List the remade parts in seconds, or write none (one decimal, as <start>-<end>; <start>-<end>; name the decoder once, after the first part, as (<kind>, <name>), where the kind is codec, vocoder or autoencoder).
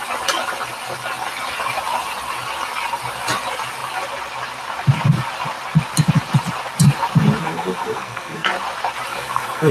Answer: 7.4-8.5 (codec, SNAC); 9.1-9.7